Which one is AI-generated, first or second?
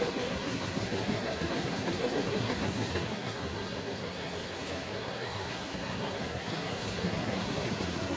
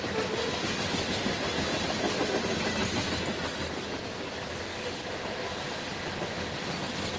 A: first